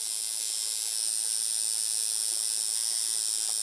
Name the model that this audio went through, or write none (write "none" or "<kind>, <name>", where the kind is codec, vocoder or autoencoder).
none